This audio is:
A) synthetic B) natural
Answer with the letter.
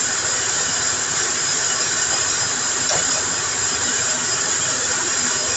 A